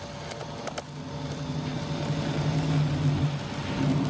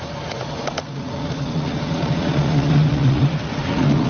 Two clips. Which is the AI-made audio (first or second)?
second